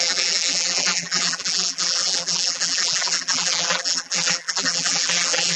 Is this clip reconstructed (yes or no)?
yes